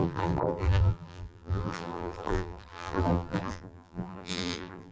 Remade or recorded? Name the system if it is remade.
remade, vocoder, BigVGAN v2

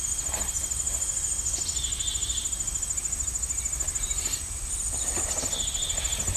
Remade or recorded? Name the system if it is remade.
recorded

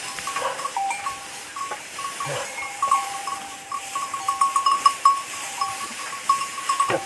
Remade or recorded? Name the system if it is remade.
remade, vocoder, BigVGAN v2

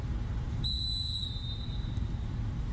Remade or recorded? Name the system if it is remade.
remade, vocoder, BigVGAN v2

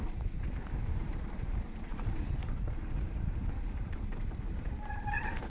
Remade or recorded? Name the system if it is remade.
remade, vocoder, BigVGAN v2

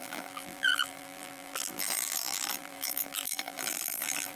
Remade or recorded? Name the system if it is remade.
remade, vocoder, BigVGAN v2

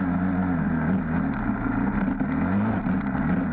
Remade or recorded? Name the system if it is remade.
recorded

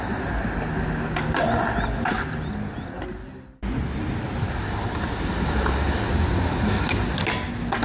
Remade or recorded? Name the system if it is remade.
recorded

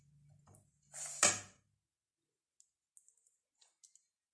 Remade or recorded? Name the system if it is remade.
recorded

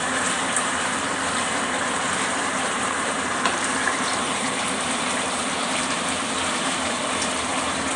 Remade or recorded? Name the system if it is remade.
remade, vocoder, BigVGAN v2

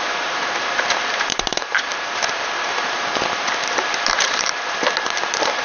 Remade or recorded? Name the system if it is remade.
remade, vocoder, BigVGAN v2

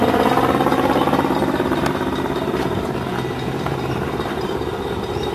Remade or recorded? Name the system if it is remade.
remade, vocoder, BigVGAN v2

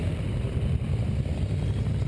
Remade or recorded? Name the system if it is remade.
remade, vocoder, BigVGAN v2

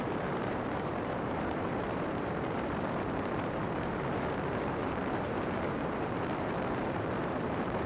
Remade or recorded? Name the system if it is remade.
remade, vocoder, BigVGAN v2